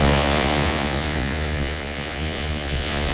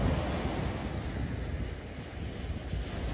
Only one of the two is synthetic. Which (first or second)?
first